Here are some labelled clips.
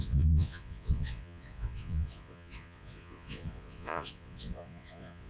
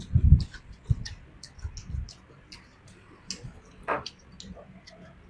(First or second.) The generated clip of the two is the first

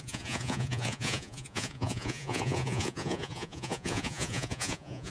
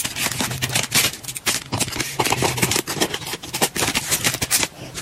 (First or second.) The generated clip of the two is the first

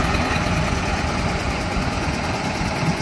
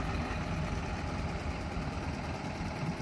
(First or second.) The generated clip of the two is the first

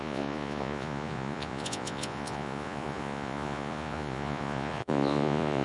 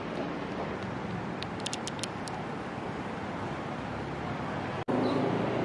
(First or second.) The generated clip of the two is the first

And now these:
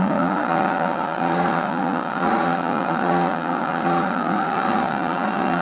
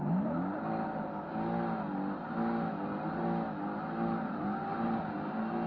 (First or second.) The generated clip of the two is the first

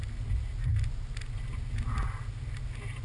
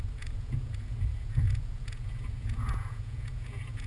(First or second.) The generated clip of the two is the second